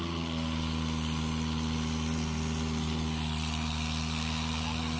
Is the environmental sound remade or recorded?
recorded